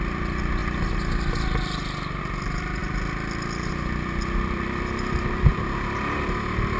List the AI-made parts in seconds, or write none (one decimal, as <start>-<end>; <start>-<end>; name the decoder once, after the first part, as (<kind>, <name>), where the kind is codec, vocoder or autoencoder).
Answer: 0.0-0.6 (vocoder, BigVGAN v2); 2.2-2.8; 3.7-6.8